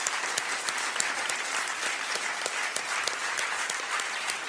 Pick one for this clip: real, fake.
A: real